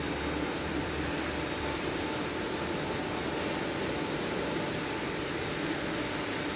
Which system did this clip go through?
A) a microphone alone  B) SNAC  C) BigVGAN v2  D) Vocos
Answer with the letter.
A